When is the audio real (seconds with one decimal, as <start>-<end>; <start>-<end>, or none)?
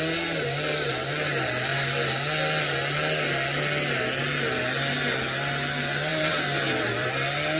0.0-6.1; 7.1-7.6